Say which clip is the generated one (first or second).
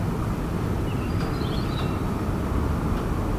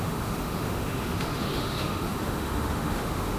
second